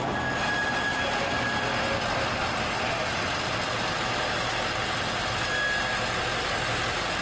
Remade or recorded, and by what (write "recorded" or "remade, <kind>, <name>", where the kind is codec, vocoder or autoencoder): recorded